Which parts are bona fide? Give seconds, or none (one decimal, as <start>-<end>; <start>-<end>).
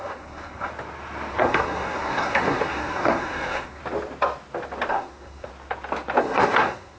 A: 0.7-1.3; 3.8-4.9; 5.5-6.2